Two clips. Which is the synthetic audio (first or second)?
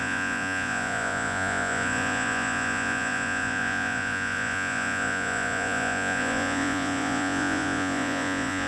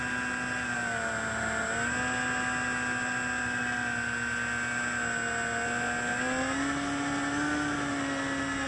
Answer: first